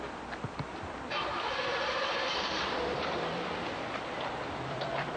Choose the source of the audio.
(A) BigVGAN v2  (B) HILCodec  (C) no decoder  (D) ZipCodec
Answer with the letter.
A